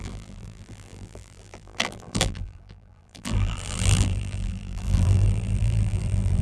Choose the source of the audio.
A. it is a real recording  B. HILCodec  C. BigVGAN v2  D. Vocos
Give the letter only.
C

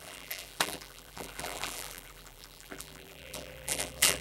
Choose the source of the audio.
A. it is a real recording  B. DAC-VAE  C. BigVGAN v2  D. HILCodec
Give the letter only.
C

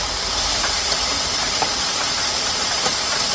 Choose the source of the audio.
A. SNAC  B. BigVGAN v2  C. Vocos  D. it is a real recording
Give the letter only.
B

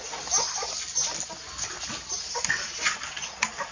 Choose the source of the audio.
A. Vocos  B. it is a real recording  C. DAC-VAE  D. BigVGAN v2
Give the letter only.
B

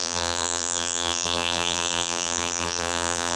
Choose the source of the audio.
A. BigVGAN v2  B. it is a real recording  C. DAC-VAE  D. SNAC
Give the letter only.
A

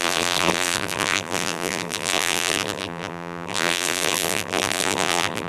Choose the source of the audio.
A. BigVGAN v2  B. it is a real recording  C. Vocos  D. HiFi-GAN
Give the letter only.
A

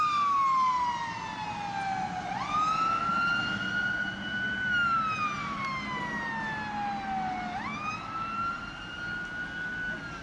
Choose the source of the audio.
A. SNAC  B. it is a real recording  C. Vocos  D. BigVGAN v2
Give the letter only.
B